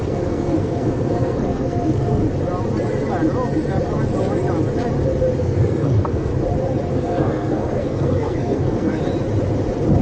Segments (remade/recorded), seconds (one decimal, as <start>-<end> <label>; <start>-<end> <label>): 0.0-2.2 remade; 2.2-5.4 recorded; 5.4-6.3 remade; 6.3-6.9 recorded; 6.9-9.0 remade; 9.0-10.0 recorded